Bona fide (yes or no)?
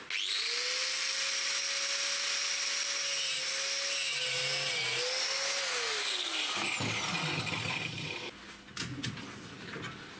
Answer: yes